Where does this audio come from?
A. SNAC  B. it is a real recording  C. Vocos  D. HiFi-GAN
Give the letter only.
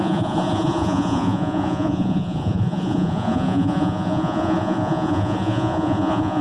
C